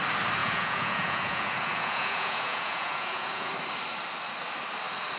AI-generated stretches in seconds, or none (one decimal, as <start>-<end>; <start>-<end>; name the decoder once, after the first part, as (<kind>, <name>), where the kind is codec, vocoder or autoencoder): 0.4-3.5 (vocoder, Vocos)